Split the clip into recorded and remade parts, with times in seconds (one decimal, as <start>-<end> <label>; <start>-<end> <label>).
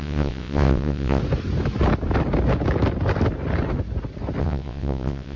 0.0-1.2 remade; 1.2-4.4 recorded; 4.4-5.4 remade